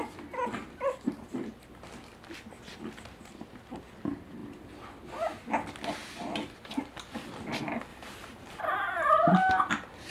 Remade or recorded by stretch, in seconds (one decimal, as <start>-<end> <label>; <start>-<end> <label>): 0.0-7.9 recorded; 7.9-8.6 remade; 8.6-10.1 recorded